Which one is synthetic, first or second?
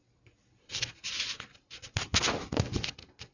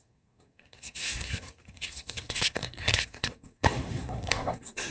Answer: second